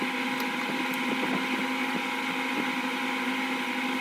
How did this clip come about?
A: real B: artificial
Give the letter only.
A